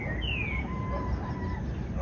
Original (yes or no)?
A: yes